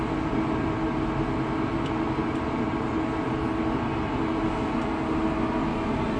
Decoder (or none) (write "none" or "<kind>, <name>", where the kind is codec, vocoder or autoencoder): none